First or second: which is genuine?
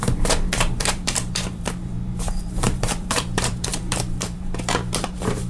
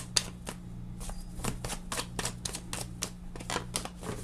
second